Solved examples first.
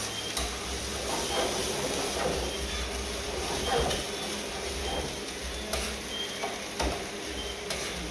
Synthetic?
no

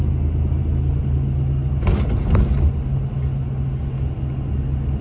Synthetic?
no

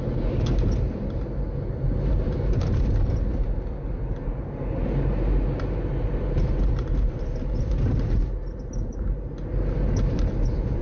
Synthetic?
no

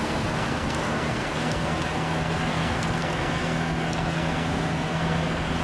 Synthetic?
yes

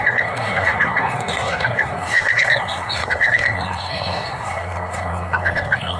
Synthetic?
yes